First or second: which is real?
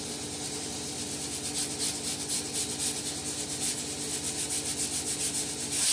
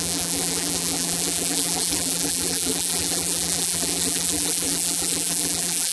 first